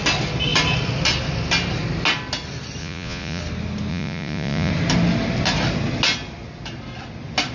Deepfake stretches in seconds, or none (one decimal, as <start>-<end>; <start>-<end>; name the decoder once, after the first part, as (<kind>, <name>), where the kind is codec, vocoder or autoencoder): 2.8-3.4 (vocoder, Vocos); 3.9-4.7